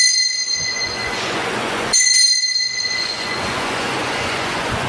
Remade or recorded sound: remade